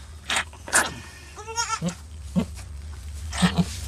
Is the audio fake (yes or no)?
yes